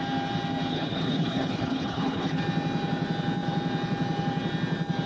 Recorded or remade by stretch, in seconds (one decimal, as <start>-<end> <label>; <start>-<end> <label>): 0.0-0.7 recorded; 0.7-2.4 remade; 2.4-5.1 recorded